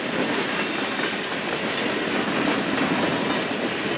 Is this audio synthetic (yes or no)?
no